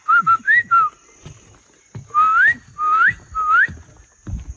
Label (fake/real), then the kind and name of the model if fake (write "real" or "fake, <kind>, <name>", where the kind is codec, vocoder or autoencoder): real